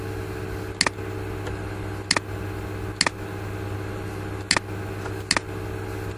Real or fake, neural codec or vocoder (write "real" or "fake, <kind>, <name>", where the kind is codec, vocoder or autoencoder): real